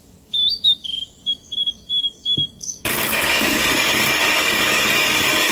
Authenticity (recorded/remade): remade